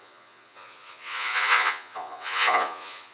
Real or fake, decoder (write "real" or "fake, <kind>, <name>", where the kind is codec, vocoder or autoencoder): fake, vocoder, Vocos